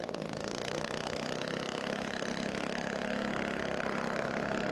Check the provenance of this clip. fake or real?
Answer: fake